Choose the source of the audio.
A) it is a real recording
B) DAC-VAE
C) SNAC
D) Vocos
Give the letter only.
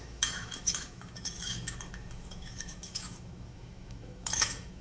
B